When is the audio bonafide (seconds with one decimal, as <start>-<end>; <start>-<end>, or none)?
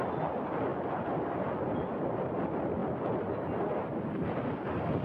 0.0-5.0